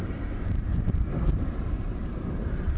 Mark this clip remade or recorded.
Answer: remade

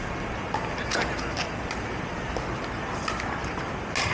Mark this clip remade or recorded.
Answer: recorded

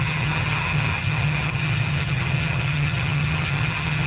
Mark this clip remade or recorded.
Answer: remade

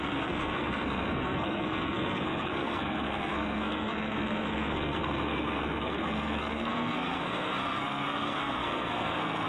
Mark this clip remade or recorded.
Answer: remade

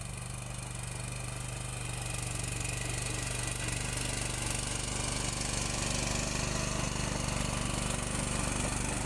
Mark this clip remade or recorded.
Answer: recorded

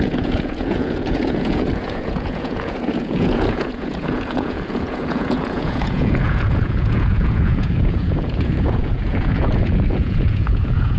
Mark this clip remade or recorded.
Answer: remade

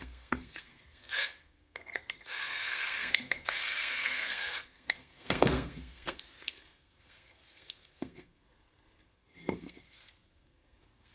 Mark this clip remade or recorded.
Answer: remade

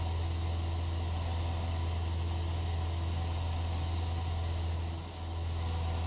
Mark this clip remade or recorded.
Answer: recorded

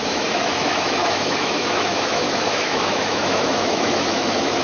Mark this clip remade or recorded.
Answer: remade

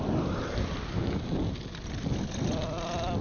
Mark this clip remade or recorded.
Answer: recorded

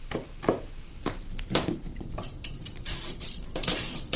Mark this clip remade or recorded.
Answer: remade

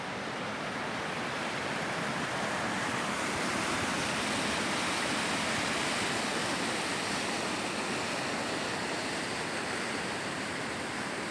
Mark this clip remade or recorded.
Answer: recorded